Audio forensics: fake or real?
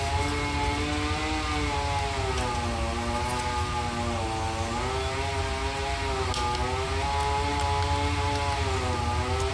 real